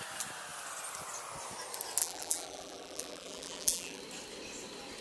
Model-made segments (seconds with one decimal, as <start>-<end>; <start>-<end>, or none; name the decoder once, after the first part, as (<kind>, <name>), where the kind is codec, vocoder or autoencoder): 2.0-4.0 (vocoder, BigVGAN v2)